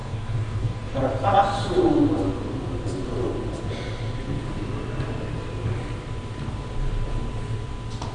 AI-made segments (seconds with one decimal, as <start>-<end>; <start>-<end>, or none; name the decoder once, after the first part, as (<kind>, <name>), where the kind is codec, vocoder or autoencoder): 0.0-1.0 (codec, DAC)